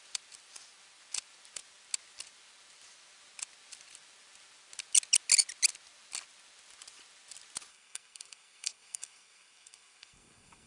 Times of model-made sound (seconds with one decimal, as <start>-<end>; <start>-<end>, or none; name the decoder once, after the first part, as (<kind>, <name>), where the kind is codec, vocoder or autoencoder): 7.7-10.7 (codec, SNAC)